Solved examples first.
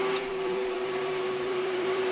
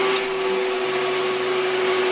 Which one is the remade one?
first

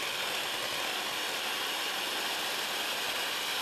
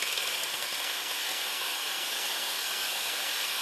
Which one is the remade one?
second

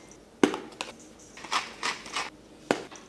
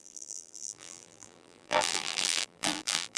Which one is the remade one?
second